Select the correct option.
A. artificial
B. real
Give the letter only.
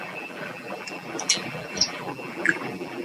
A